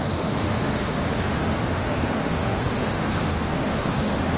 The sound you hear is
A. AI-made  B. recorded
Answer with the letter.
A